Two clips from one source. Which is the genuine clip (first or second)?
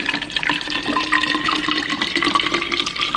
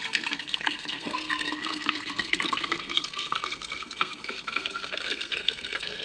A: first